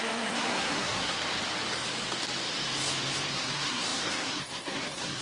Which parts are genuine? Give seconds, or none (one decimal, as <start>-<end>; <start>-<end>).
1.2-3.3